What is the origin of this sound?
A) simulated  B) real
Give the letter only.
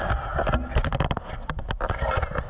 B